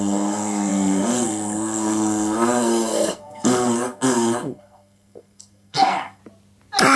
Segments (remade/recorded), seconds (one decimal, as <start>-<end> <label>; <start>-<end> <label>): 0.0-6.2 remade; 6.2-7.0 recorded